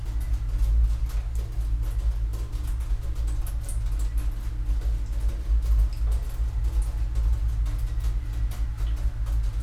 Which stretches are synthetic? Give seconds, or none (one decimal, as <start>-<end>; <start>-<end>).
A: none